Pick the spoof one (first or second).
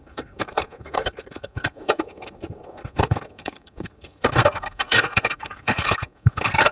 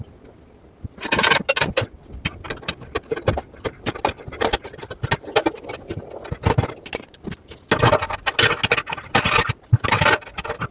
first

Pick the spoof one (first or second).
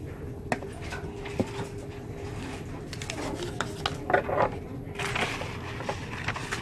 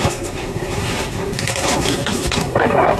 second